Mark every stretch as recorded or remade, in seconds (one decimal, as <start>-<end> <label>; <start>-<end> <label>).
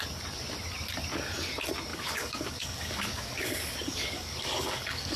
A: 0.0-1.9 recorded; 1.9-5.2 remade